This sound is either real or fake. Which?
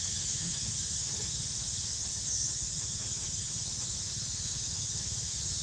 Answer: fake